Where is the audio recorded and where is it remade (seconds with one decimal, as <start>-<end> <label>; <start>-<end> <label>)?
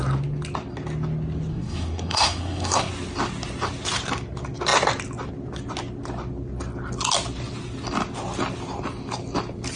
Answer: 0.0-1.5 recorded; 1.5-2.9 remade; 2.9-9.8 recorded